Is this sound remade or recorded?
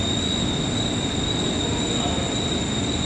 recorded